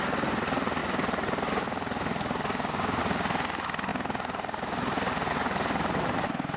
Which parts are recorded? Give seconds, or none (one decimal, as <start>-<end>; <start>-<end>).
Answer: 0.0-6.6

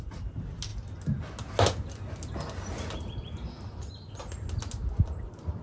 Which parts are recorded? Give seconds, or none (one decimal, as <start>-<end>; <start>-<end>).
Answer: 0.0-5.6

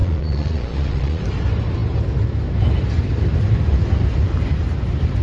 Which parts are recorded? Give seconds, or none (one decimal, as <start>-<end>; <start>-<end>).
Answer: 1.2-5.2